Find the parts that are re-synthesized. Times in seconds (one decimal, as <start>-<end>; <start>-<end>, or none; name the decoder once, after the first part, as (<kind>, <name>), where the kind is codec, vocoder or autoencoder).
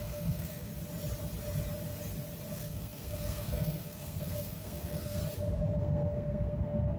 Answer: 0.0-0.7 (codec, SNAC); 2.5-5.2; 5.8-7.0